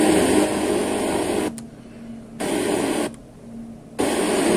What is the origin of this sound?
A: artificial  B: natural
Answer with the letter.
B